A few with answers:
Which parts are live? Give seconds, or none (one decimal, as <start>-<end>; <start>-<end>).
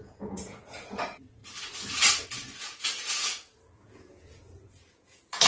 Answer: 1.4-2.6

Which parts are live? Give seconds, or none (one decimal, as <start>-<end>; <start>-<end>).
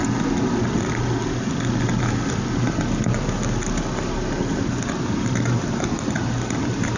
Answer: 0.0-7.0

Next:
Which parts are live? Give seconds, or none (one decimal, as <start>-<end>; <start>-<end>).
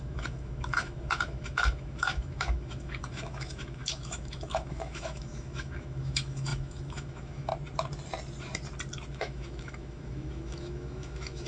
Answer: 7.5-9.1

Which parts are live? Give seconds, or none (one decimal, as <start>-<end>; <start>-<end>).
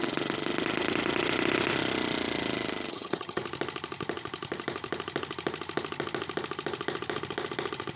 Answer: 0.0-2.9; 3.4-8.0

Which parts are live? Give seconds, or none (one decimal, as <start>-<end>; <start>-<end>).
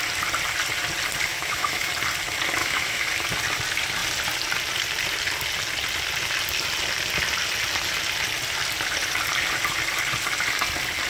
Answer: 0.0-1.3; 1.9-2.6; 3.1-11.1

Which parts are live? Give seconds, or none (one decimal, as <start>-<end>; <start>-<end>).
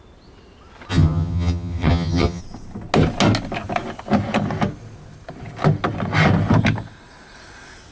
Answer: 0.0-0.9; 2.4-7.9